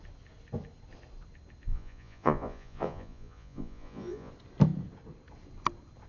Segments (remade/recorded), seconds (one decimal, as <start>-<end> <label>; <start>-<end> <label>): 0.0-1.7 recorded; 1.7-4.3 remade; 4.3-6.1 recorded